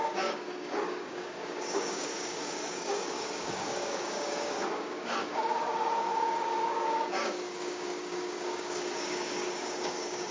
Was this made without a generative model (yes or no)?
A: no